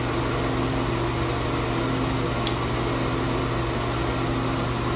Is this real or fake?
real